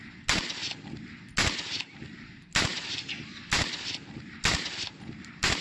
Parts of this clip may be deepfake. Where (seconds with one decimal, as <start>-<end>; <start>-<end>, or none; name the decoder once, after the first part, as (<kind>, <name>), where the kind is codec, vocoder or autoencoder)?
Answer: none